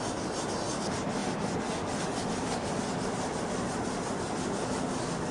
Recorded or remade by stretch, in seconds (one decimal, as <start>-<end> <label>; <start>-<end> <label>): 0.0-5.3 recorded